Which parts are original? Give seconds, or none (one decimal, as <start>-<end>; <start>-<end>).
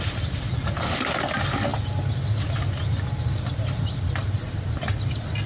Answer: 0.0-5.5